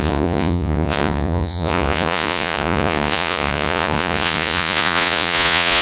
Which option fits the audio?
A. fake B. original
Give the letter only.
A